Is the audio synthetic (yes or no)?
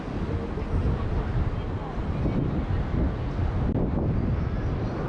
no